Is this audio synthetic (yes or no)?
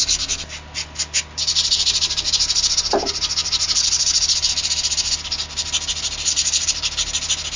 no